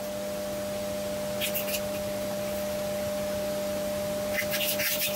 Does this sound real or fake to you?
real